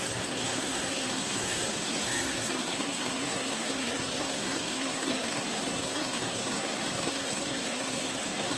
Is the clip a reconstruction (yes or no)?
yes